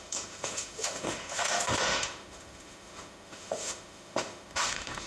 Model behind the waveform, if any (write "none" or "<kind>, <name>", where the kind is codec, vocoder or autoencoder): autoencoder, DAC-VAE